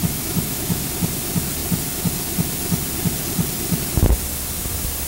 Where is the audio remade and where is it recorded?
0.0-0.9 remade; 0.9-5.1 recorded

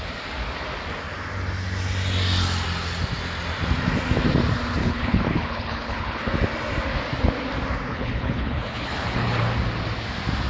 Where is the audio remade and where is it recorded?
0.0-4.8 recorded; 4.8-6.2 remade; 6.2-7.9 recorded; 7.9-9.4 remade; 9.4-10.5 recorded

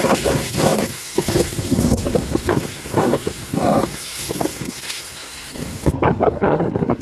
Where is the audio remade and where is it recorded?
0.0-7.0 remade

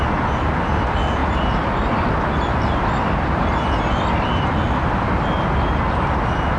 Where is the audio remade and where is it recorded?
0.0-6.6 recorded

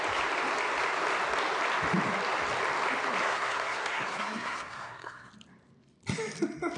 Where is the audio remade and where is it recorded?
0.0-3.2 recorded; 3.2-5.3 remade; 5.3-6.8 recorded

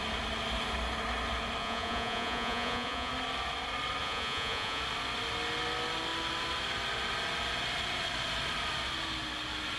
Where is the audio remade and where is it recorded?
0.0-1.6 recorded; 1.6-3.1 remade; 3.1-4.0 recorded; 4.0-4.8 remade; 4.8-9.8 recorded

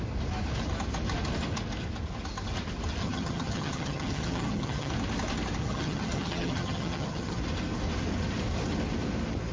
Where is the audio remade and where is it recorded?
0.0-3.0 recorded; 3.0-4.9 remade; 4.9-5.6 recorded; 5.6-7.4 remade; 7.4-9.5 recorded